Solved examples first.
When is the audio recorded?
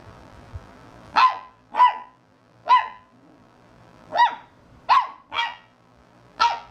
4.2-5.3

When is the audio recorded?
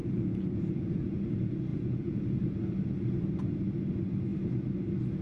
0.9-1.7; 2.2-5.2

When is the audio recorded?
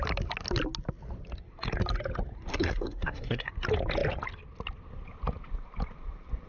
0.0-2.5; 3.5-6.5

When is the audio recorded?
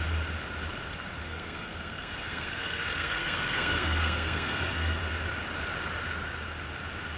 0.0-1.2; 5.0-7.2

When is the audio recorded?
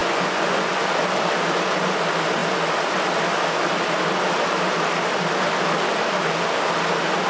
0.8-7.3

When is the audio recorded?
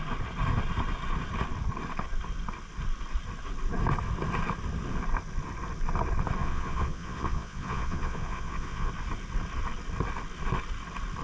0.0-6.4; 8.9-11.2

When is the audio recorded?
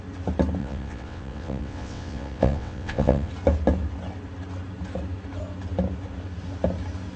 0.0-0.6; 3.3-7.2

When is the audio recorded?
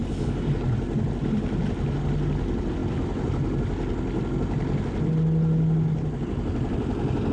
0.5-7.3